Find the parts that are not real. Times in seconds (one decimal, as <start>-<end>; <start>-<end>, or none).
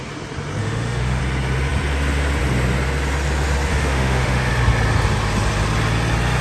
0.6-1.2; 3.7-4.5